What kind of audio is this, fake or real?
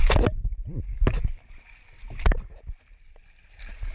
real